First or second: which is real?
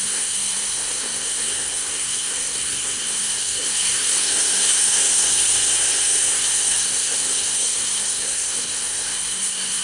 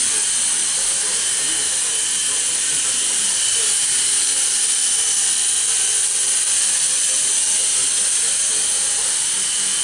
second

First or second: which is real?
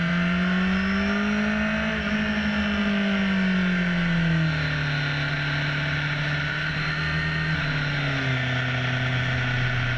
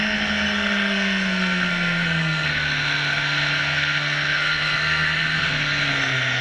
first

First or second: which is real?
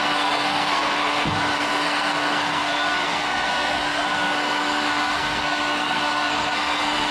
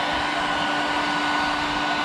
second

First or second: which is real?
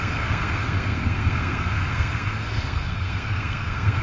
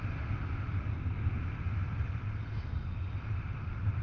second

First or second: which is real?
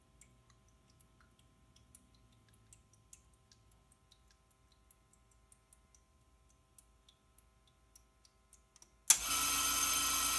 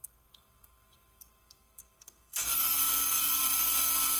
first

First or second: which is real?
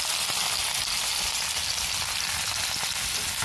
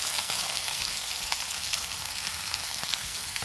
first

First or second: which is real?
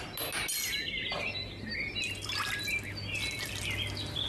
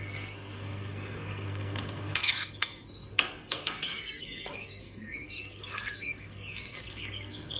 first